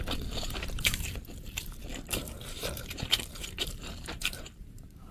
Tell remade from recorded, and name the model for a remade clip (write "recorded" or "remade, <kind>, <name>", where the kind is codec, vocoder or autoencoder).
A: remade, vocoder, BigVGAN v2